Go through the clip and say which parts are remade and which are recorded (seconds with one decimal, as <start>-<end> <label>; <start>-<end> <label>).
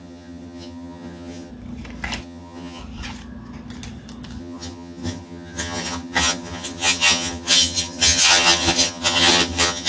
0.0-1.5 remade; 1.5-2.2 recorded; 2.2-2.8 remade; 2.8-4.4 recorded; 4.4-9.9 remade